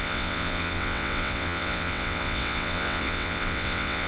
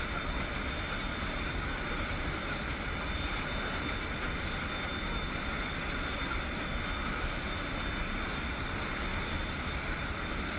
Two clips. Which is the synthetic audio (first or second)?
first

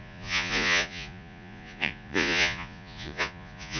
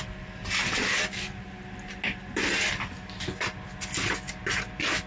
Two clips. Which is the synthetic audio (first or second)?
first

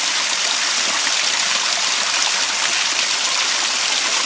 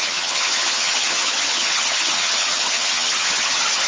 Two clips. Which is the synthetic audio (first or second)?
second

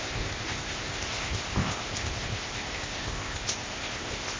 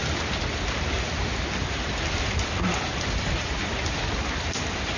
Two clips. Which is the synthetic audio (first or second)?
first